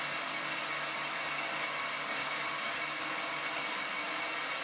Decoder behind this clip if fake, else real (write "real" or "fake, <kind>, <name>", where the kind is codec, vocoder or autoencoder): real